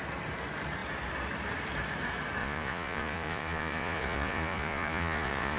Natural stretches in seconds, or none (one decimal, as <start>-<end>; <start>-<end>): 0.0-2.4